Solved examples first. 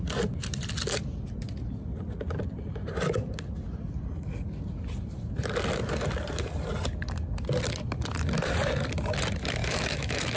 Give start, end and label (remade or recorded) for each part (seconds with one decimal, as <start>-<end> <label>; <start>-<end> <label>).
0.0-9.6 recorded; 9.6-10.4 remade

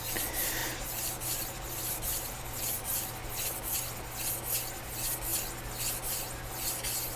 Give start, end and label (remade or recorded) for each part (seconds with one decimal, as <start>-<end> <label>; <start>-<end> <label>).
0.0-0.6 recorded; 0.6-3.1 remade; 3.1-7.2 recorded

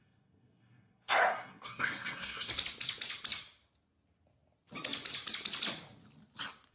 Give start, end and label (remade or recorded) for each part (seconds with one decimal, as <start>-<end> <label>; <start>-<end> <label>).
0.0-2.5 remade; 2.5-6.7 recorded

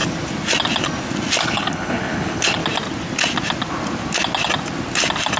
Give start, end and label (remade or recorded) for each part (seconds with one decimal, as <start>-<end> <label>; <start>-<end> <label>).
0.0-1.4 recorded; 1.4-2.6 remade; 2.6-5.4 recorded

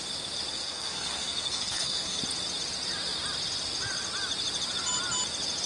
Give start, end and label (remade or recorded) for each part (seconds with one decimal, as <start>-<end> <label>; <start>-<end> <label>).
0.0-0.5 recorded; 0.5-2.2 remade; 2.2-5.7 recorded

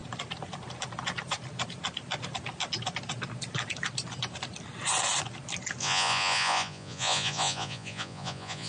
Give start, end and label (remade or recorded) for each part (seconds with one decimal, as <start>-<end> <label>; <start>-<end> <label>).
0.0-5.8 recorded; 5.8-8.7 remade

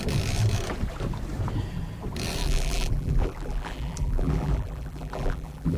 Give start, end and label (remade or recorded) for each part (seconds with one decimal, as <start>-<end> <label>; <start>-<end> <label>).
0.0-2.4 recorded; 2.4-5.8 remade

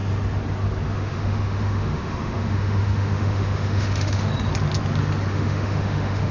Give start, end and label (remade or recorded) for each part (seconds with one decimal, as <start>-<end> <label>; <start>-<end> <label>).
0.0-0.9 recorded; 0.9-4.3 remade; 4.3-5.3 recorded; 5.3-6.3 remade